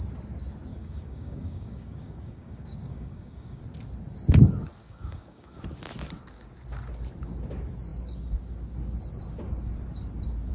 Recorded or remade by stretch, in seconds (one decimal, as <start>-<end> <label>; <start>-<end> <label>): 0.0-0.7 recorded; 0.7-3.6 remade; 3.6-4.8 recorded; 4.8-5.6 remade; 5.6-10.5 recorded